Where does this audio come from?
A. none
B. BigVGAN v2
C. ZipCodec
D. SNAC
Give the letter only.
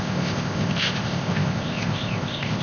C